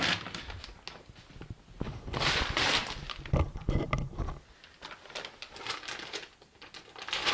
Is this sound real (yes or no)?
yes